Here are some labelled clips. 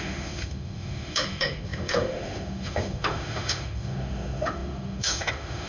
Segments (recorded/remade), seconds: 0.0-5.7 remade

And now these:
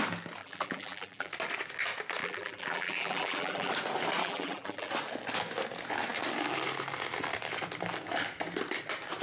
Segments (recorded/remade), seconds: 0.0-0.4 recorded; 0.4-1.3 remade; 1.3-2.2 recorded; 2.2-3.7 remade; 3.7-4.2 recorded; 4.2-4.9 remade; 4.9-9.2 recorded